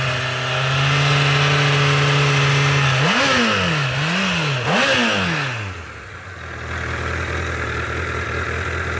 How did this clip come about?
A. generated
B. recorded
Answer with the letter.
B